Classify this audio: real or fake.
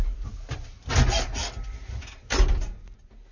real